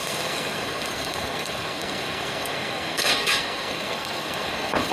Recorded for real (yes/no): no